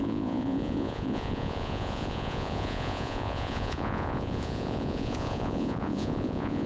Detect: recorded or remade remade